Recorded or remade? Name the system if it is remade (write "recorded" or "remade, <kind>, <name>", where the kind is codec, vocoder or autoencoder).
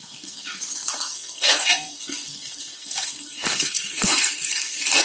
remade, codec, SNAC